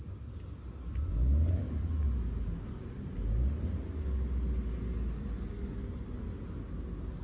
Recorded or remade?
recorded